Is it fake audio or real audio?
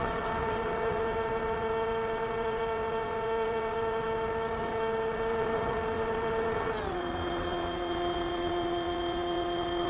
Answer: fake